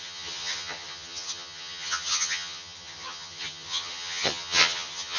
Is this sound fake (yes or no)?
yes